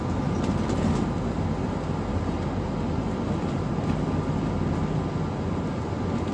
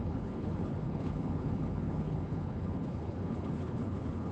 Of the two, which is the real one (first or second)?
first